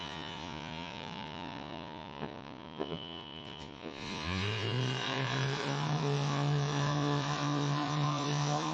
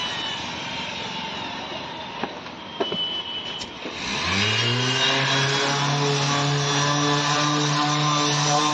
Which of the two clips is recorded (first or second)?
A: second